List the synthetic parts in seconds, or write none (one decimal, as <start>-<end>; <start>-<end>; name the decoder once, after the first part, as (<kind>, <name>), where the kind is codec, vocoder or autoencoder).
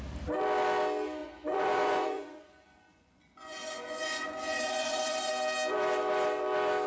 1.2-5.3 (vocoder, Vocos)